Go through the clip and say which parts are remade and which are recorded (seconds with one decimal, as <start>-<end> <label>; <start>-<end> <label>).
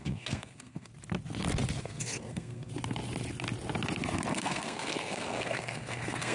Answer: 0.0-0.9 remade; 0.9-1.8 recorded; 1.8-2.7 remade; 2.7-4.3 recorded; 4.3-6.3 remade